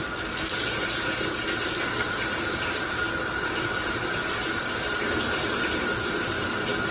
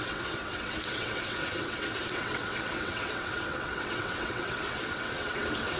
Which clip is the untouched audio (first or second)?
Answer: first